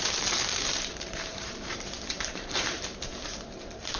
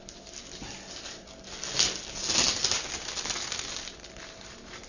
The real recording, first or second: second